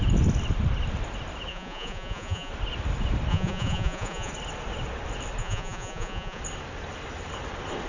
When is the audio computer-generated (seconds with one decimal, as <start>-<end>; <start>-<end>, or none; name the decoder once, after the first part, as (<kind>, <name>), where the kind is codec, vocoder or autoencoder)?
1.5-2.5 (vocoder, Vocos); 3.3-4.3; 5.4-6.4